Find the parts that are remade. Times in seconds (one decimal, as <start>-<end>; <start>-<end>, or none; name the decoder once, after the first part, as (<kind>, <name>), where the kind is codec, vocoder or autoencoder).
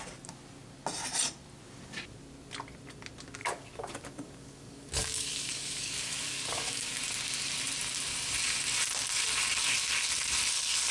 3.4-7.0 (codec, DAC)